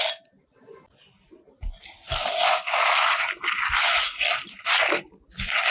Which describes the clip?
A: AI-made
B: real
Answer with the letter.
B